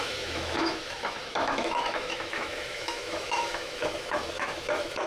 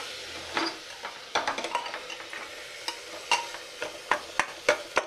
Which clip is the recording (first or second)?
second